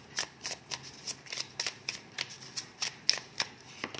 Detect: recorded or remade recorded